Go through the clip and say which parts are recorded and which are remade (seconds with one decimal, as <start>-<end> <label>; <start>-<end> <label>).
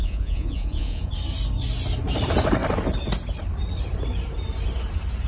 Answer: 0.0-1.1 remade; 1.1-5.3 recorded